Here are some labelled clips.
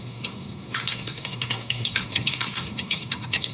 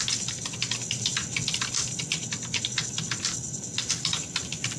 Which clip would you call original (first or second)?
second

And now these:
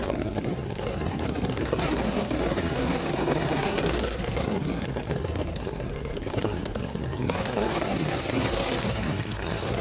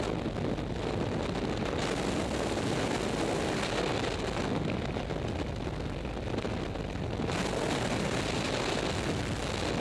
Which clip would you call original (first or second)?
second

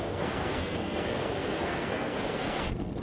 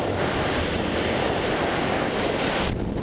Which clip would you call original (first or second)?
second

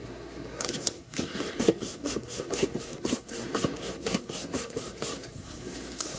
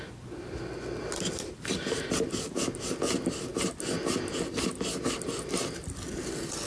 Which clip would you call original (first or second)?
second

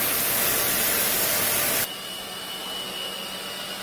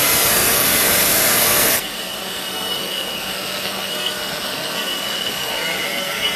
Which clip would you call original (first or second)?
first